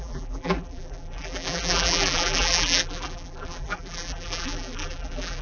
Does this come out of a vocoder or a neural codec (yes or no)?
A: yes